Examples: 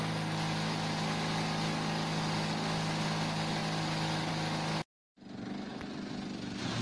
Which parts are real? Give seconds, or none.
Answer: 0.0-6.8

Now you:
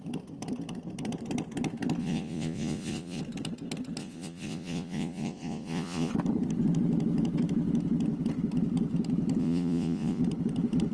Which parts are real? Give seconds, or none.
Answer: 0.0-2.0; 3.2-4.0; 6.1-9.4; 10.2-10.9

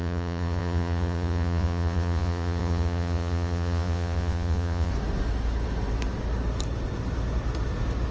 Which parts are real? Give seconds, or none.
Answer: 4.9-8.1

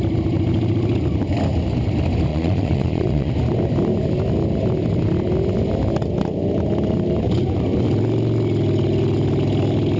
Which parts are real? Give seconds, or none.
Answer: 0.0-2.3; 3.3-10.0

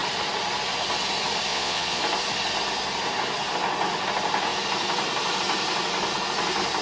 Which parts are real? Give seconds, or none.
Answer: 0.0-1.5; 2.0-6.8

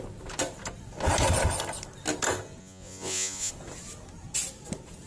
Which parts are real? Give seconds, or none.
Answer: 0.0-2.6; 3.5-5.1